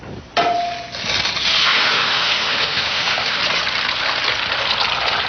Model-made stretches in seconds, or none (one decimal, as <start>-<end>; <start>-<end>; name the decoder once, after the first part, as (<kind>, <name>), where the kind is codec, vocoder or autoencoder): 1.6-3.4 (autoencoder, DAC-VAE)